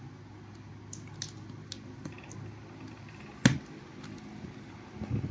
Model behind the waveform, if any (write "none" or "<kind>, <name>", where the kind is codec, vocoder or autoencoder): none